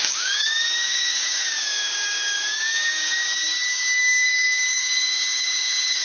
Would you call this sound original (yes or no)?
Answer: no